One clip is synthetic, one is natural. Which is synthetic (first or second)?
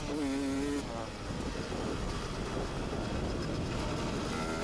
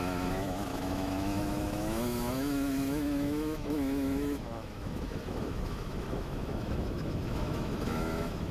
second